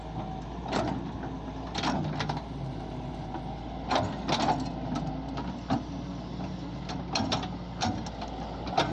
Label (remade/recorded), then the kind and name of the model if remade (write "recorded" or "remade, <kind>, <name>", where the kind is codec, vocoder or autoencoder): recorded